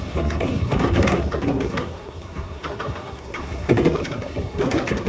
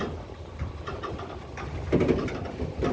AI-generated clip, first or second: first